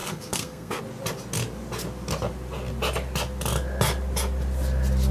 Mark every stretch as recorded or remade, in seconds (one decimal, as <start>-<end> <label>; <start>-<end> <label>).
0.0-0.8 remade; 0.8-5.1 recorded